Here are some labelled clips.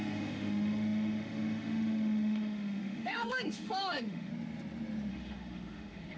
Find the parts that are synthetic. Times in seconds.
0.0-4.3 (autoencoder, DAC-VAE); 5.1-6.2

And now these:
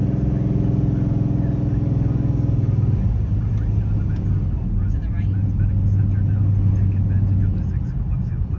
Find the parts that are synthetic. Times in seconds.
none

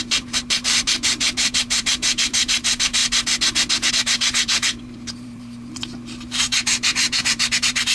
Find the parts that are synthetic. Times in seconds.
0.0-3.0 (vocoder, BigVGAN v2); 3.9-7.9

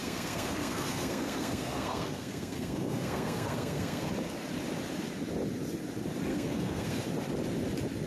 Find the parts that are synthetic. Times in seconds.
0.0-4.1 (codec, SNAC); 6.3-7.0

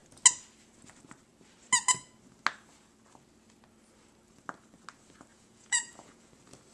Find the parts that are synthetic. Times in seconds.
5.3-6.3 (vocoder, Vocos)

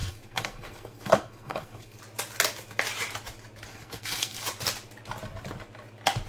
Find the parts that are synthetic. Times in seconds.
0.0-2.0 (codec, SNAC); 3.7-4.4